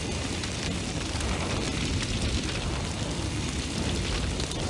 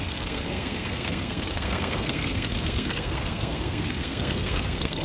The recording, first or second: first